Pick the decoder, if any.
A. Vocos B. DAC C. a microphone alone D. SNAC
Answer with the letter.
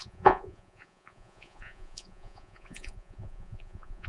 A